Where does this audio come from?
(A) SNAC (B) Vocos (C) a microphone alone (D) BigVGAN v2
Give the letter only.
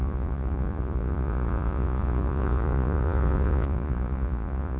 B